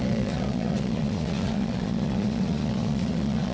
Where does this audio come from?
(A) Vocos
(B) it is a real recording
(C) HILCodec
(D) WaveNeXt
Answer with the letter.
A